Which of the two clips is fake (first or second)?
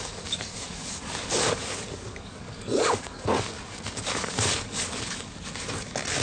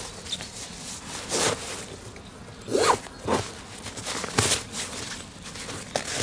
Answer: first